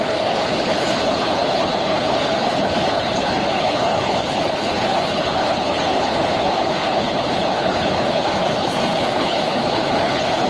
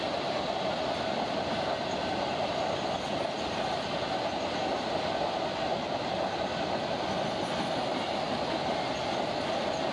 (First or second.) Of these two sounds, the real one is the second